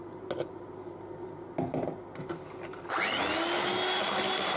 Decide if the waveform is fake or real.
real